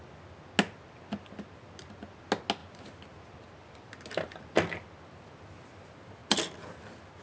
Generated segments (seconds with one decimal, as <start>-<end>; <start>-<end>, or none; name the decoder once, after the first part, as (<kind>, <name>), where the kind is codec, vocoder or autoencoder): none